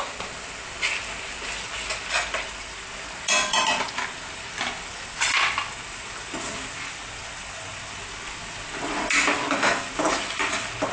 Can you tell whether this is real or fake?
real